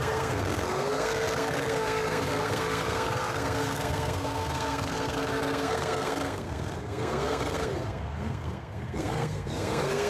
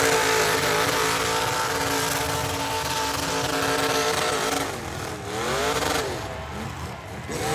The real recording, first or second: second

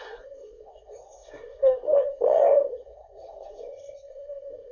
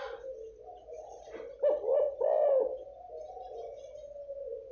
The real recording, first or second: second